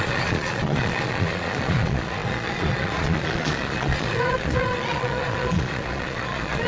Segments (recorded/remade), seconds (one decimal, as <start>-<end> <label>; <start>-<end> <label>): 0.0-6.7 remade